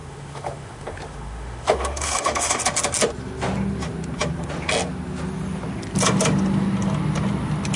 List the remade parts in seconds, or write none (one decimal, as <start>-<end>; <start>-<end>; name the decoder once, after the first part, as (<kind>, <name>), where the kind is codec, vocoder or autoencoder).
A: 0.0-2.6 (autoencoder, DAC-VAE)